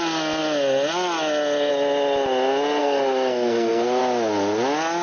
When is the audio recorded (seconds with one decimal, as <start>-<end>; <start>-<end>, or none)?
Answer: 0.0-2.8; 4.0-5.0